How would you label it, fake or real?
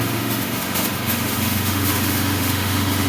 fake